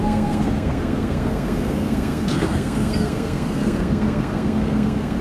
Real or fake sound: fake